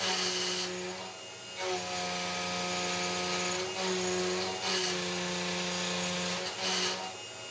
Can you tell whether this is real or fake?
real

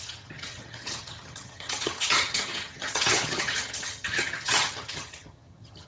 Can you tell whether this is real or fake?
fake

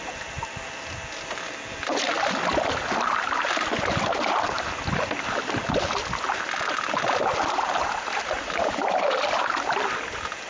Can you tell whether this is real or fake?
real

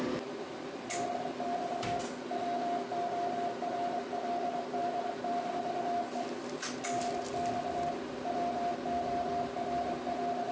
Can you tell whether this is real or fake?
real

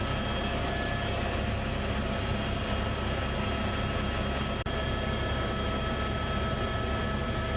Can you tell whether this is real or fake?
real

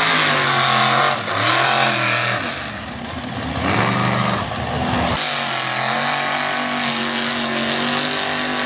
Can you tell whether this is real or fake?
real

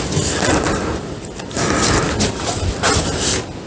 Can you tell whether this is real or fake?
real